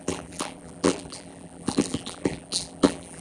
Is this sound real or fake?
fake